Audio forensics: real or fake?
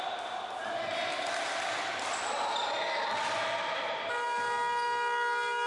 real